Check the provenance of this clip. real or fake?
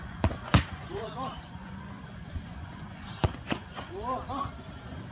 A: fake